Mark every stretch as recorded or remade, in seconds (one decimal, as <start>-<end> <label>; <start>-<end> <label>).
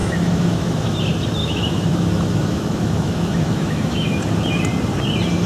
0.0-1.0 remade; 1.0-1.4 recorded; 1.4-4.2 remade; 4.2-5.5 recorded